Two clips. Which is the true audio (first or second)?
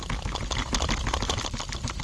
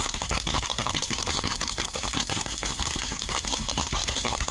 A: first